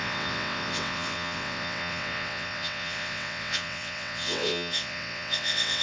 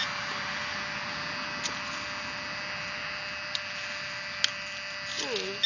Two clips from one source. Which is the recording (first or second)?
second